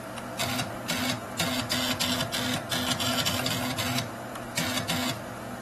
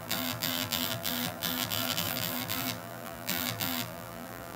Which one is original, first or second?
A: first